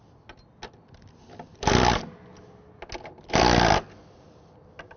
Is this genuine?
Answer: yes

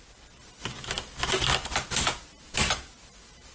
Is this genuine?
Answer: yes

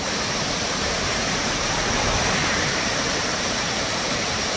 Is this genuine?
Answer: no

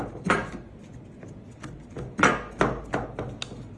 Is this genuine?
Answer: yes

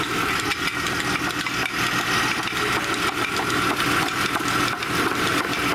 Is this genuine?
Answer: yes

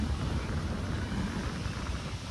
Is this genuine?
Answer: yes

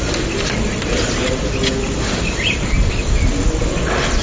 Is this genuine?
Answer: yes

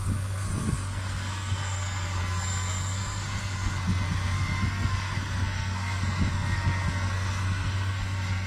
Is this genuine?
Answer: no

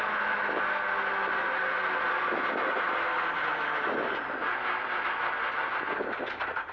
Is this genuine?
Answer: yes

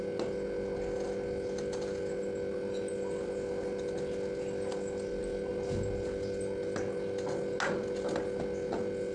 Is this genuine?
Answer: yes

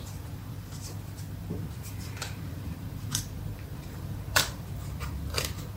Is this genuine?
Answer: no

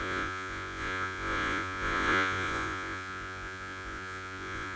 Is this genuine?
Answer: no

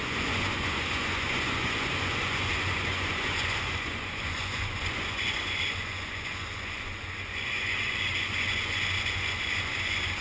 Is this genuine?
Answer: no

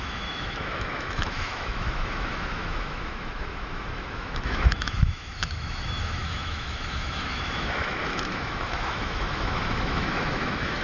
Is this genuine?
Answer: no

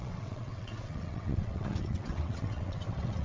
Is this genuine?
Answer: no